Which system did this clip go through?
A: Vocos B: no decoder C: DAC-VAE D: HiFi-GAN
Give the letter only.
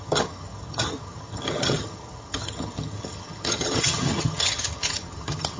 D